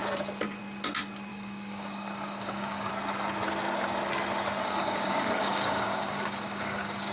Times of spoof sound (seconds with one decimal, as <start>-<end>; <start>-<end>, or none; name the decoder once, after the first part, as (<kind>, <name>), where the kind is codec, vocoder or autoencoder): 1.3-2.9 (codec, DAC); 4.6-7.1